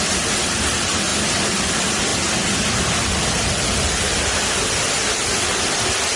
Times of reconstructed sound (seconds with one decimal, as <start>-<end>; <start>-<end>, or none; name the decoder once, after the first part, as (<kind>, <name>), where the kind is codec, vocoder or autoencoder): none